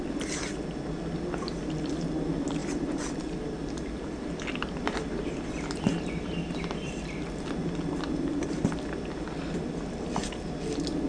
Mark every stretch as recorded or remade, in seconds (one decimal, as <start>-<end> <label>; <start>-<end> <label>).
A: 0.0-11.1 recorded